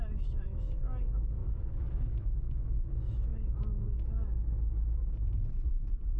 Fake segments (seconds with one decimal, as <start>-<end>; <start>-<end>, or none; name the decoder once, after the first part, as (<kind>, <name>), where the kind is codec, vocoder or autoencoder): 1.4-5.1 (autoencoder, DAC-VAE)